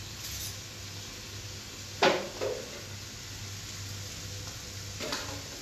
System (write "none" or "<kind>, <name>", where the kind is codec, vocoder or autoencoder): none